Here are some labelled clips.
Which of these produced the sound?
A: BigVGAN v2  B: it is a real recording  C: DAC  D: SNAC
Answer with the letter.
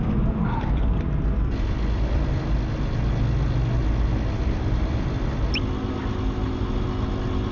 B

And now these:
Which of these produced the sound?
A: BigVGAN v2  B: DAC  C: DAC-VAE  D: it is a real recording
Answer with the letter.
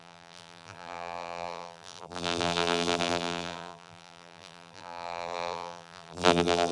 A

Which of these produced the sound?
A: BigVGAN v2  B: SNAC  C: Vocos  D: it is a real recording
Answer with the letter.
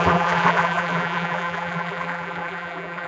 A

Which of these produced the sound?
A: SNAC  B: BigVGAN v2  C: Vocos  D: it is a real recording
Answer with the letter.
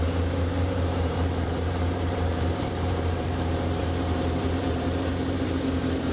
B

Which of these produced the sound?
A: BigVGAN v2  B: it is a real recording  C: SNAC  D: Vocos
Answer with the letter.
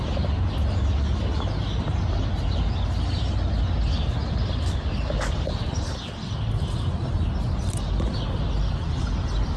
B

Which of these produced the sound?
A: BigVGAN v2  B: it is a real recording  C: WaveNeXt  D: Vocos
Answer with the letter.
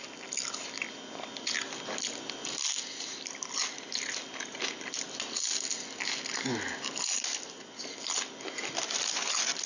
B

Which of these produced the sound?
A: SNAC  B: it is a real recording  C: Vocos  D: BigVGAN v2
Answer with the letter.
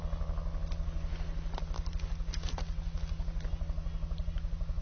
B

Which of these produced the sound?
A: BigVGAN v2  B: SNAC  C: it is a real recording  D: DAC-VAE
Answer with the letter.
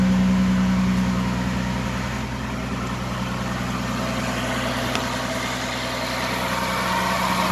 C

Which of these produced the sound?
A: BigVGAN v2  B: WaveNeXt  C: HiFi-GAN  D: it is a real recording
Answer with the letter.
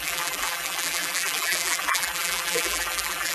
A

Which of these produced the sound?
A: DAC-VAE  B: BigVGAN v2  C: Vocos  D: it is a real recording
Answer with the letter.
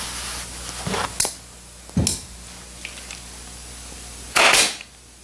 D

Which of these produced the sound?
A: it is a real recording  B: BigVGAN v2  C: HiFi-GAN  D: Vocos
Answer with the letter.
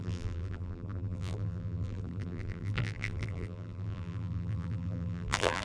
B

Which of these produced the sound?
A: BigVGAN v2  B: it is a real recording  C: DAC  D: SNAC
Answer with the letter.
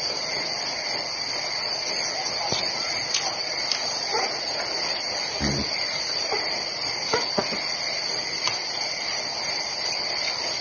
A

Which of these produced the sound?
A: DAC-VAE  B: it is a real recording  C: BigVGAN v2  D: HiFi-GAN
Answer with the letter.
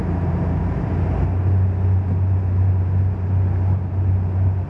B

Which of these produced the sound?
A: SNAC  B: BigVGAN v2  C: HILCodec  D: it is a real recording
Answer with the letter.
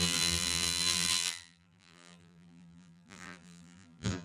B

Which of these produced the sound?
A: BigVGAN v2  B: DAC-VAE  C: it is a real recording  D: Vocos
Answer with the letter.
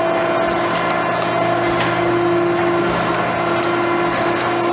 C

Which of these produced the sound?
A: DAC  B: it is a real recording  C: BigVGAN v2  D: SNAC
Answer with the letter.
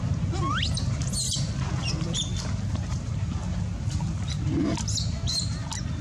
B